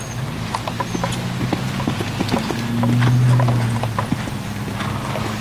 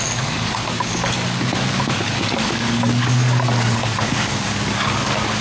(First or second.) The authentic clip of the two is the first